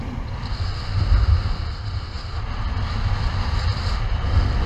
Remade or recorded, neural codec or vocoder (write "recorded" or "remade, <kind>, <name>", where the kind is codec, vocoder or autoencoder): recorded